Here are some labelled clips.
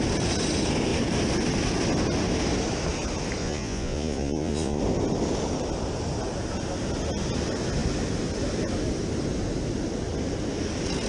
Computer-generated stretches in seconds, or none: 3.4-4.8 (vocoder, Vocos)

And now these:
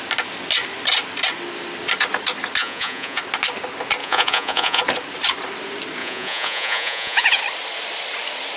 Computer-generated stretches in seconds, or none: 2.6-3.2 (vocoder, Vocos); 4.0-4.8; 6.0-7.4